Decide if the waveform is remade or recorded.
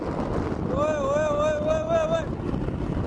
recorded